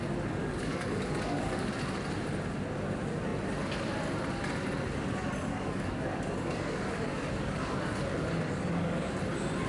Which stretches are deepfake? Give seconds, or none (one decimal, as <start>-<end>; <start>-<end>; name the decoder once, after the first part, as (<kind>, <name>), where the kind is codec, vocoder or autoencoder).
0.4-1.7 (codec, DAC); 5.5-9.1